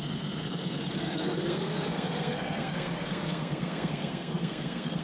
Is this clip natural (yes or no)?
no